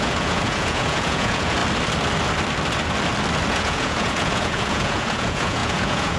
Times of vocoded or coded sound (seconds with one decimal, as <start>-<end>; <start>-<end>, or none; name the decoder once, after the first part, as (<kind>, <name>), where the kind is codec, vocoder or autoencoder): 0.0-1.6 (vocoder, Vocos); 3.5-6.2